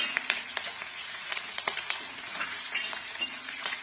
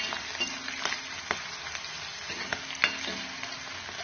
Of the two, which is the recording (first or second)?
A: second